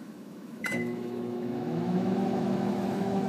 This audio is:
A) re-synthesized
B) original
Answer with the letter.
A